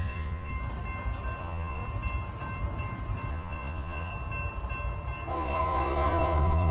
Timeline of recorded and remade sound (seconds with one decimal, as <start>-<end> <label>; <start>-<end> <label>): 0.0-0.5 remade; 0.5-1.4 recorded; 1.4-1.8 remade; 1.8-3.3 recorded; 3.3-4.1 remade; 4.1-5.3 recorded; 5.3-6.7 remade